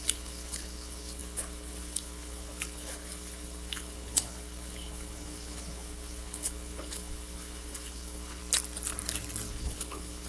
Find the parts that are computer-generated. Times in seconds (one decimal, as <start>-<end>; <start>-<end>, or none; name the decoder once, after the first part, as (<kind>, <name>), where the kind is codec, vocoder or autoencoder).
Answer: 0.0-8.4 (codec, HILCodec); 9.5-10.3